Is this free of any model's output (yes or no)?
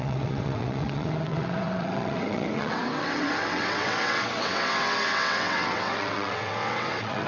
no